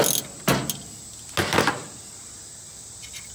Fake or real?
real